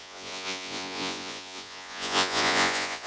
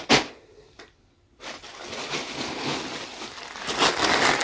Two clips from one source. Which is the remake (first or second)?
first